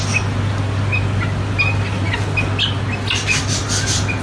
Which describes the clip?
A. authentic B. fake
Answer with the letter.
A